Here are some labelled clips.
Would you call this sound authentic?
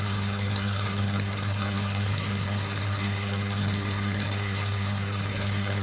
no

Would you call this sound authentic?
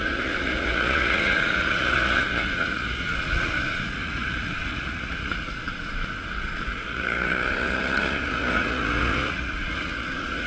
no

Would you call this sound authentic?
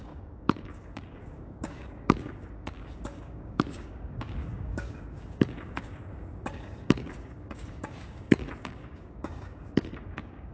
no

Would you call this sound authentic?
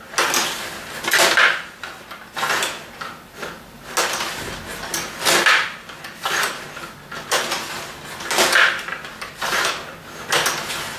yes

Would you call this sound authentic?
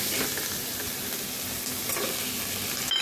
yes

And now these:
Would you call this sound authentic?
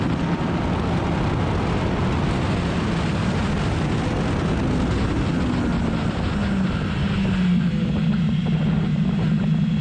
yes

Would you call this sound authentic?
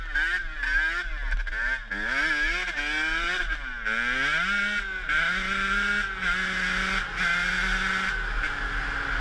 yes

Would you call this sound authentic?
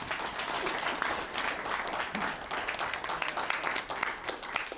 yes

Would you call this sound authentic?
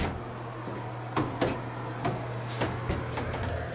yes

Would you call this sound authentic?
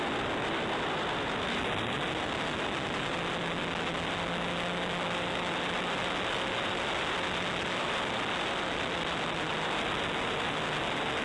yes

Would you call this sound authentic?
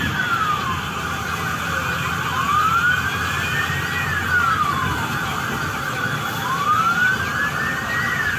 yes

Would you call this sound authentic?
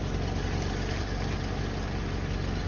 yes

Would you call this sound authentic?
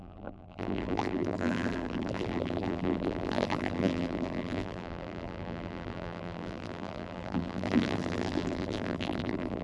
no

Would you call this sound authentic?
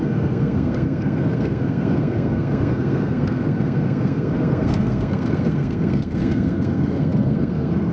no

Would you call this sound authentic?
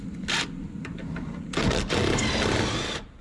yes